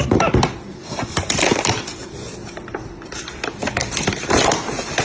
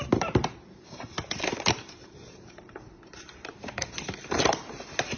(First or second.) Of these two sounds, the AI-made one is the second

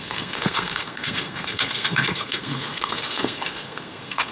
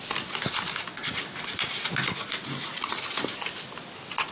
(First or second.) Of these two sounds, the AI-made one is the first